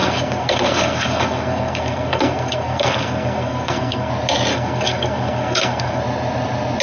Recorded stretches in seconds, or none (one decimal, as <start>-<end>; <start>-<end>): 4.1-4.5; 6.0-6.8